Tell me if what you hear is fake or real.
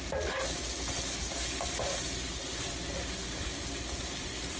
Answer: real